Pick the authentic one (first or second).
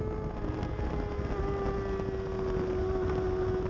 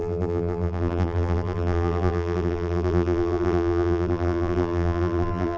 first